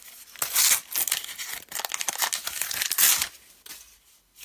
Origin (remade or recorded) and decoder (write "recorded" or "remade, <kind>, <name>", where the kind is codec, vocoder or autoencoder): recorded